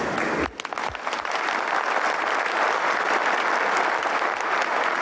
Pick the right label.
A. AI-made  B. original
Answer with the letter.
B